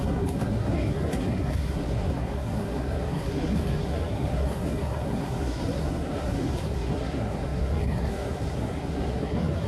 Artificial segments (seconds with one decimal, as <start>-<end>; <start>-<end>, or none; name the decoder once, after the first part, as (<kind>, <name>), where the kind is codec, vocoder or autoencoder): 0.0-9.7 (codec, SNAC)